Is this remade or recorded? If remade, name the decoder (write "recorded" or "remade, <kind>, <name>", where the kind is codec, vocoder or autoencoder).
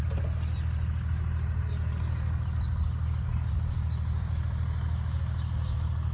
recorded